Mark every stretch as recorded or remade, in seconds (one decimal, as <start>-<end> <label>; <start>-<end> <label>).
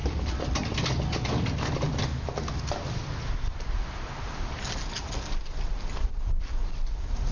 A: 0.0-7.3 recorded